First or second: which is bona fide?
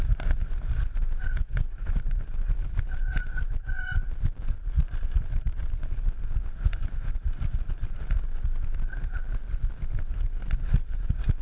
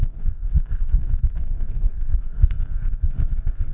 first